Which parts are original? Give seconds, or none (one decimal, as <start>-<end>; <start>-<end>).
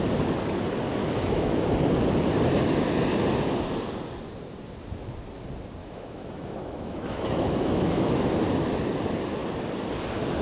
0.0-1.0; 1.6-5.8; 8.3-10.4